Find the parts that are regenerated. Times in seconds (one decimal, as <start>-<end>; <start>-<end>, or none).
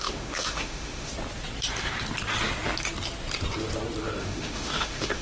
0.0-1.1; 4.2-5.2